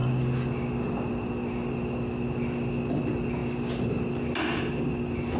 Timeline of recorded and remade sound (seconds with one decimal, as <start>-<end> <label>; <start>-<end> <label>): 0.0-5.4 recorded